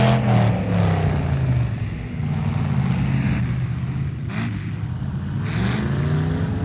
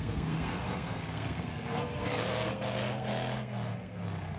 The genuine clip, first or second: first